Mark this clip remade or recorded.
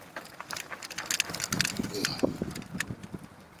recorded